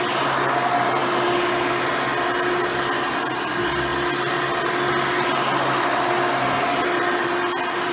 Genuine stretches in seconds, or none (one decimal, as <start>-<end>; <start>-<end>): 0.0-7.9